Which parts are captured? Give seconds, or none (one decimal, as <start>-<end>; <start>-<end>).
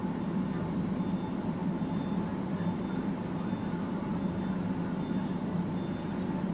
0.0-6.5